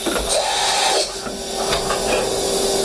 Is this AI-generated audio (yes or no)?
no